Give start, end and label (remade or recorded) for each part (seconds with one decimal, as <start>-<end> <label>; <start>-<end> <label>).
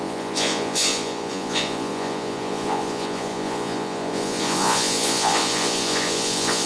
0.0-6.7 remade